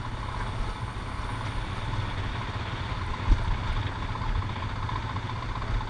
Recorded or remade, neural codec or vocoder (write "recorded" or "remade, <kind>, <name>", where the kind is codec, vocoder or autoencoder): recorded